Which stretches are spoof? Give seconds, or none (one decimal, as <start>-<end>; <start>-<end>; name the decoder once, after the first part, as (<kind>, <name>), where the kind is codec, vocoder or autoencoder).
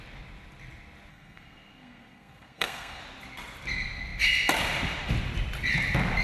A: 1.1-3.0 (codec, SNAC)